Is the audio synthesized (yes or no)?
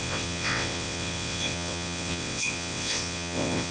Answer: yes